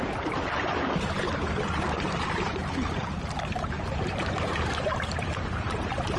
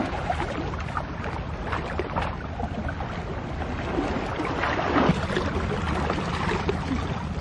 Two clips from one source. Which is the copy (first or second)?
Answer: first